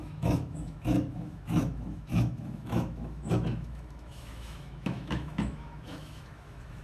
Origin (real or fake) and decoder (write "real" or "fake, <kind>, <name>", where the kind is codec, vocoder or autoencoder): fake, autoencoder, DAC-VAE